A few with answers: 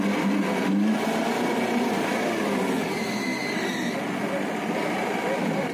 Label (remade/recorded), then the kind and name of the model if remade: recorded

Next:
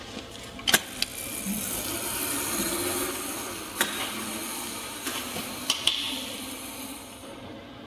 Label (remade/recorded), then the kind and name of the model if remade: recorded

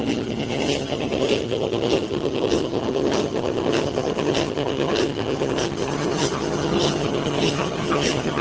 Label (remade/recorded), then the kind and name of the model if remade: remade, vocoder, HiFi-GAN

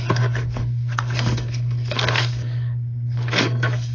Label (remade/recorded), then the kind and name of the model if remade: remade, codec, SNAC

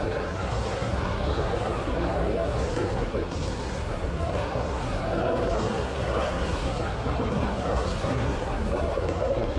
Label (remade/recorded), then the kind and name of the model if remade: remade, codec, SNAC